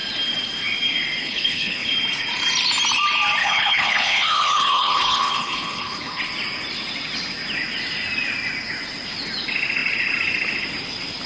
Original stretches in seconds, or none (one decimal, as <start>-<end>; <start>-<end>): 0.0-1.2; 1.9-3.4; 6.2-11.3